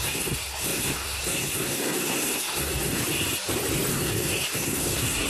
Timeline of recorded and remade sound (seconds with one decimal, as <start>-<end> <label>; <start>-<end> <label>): 0.0-3.0 remade; 3.0-3.9 recorded; 3.9-5.3 remade